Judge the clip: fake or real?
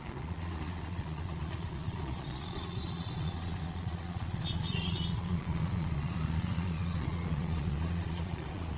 fake